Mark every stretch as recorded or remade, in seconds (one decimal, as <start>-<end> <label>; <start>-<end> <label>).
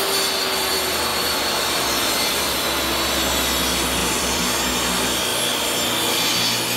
0.0-1.1 recorded; 1.1-2.6 remade; 2.6-4.0 recorded; 4.0-4.7 remade; 4.7-6.8 recorded